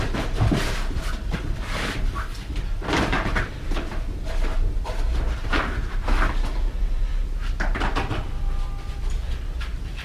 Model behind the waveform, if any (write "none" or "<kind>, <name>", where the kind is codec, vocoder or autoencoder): vocoder, BigVGAN v2